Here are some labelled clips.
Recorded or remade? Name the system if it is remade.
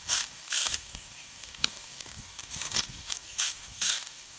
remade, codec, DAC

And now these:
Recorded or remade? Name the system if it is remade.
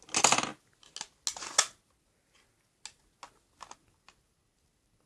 recorded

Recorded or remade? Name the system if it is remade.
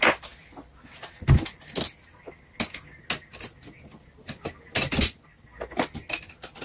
recorded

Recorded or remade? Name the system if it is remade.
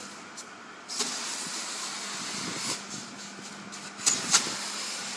recorded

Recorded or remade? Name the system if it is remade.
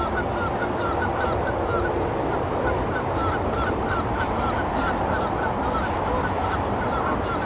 recorded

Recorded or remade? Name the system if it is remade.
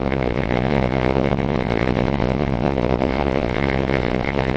remade, vocoder, Vocos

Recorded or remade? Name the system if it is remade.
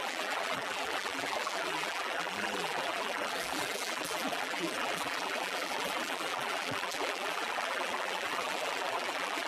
remade, vocoder, BigVGAN v2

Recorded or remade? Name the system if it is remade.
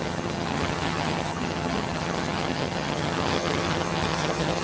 remade, vocoder, HiFi-GAN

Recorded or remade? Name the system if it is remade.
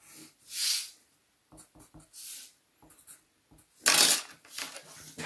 recorded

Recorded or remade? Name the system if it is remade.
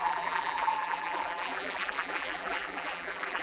remade, vocoder, BigVGAN v2